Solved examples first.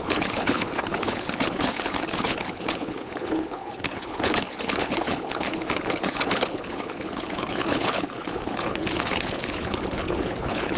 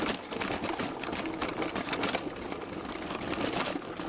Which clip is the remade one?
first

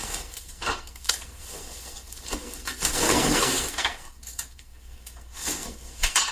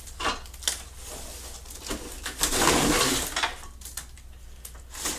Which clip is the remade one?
first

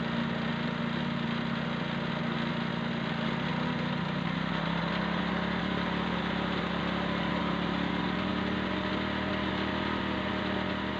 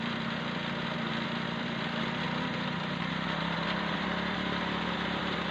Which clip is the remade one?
second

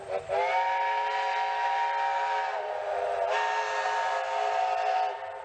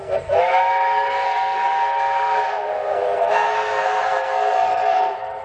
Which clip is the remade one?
second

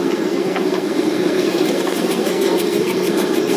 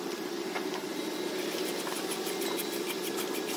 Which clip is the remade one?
first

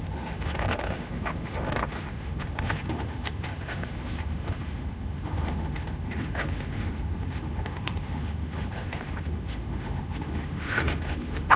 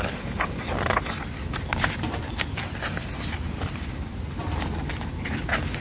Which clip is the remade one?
first